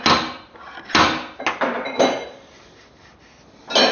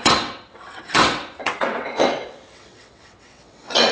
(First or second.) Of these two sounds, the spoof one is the second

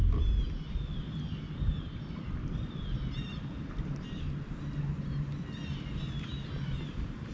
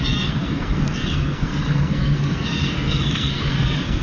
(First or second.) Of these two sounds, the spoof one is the second